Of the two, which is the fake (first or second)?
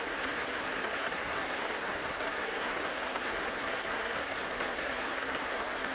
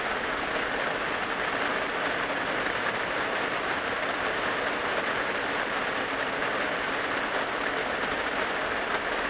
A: first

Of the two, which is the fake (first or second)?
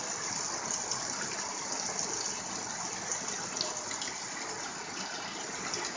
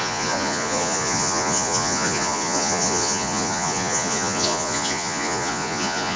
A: second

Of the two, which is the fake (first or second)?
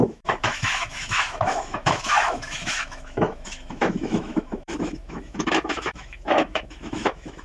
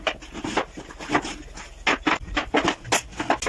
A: first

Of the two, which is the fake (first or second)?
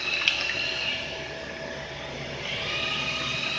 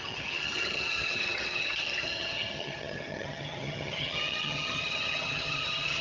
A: second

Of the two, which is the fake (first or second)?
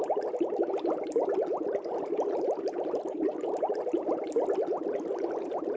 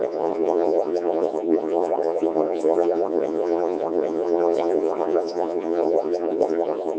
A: second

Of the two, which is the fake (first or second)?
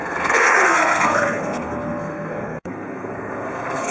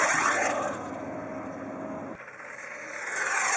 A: first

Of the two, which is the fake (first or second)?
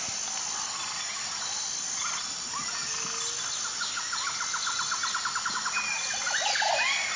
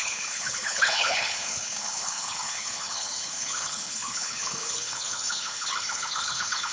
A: second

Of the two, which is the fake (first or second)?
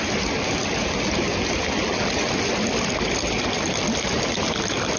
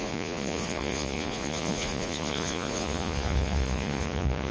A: second